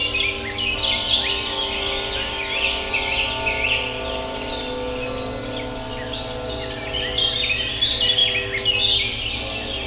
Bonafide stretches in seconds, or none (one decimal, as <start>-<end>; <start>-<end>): 0.0-9.9